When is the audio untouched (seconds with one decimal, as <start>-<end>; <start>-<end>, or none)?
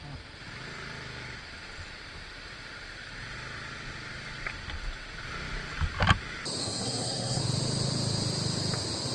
0.0-6.6; 7.4-9.1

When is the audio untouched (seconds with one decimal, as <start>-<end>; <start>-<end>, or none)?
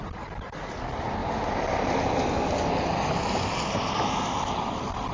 0.0-5.1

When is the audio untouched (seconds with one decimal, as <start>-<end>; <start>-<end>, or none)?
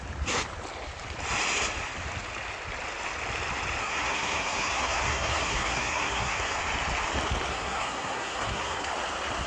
0.0-3.8; 6.6-7.5; 8.9-9.5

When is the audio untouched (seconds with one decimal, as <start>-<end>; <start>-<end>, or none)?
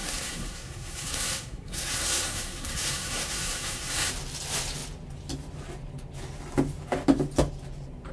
4.1-8.1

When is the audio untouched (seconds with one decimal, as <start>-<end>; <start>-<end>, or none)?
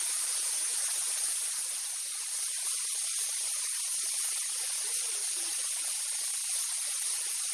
0.0-7.5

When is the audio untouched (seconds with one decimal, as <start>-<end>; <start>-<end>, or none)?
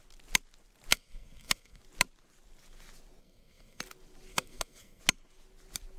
0.0-0.9; 1.8-3.2; 3.8-4.3; 5.0-6.0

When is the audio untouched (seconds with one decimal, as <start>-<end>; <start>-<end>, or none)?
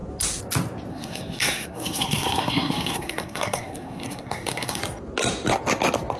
0.0-0.9; 4.8-6.2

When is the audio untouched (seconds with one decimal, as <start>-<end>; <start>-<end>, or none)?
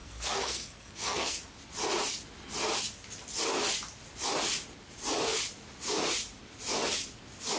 1.4-7.6